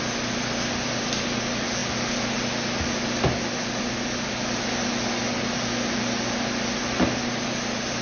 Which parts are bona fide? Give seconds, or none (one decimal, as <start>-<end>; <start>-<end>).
0.0-8.0